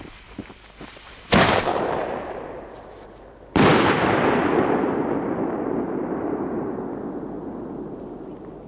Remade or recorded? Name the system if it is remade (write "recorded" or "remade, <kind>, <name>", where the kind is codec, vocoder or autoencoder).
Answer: remade, vocoder, BigVGAN v2